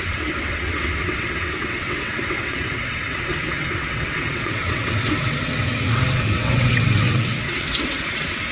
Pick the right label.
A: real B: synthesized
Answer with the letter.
B